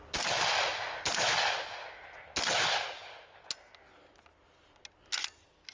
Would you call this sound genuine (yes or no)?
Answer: yes